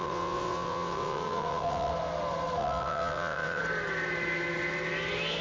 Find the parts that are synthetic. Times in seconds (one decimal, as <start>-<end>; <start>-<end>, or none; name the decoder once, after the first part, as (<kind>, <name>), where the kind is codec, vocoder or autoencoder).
0.0-1.9 (vocoder, WaveNeXt); 2.6-3.6